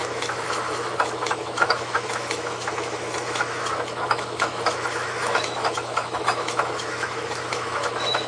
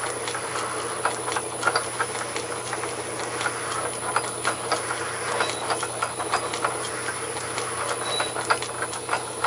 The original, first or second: second